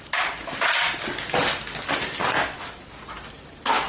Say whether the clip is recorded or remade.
recorded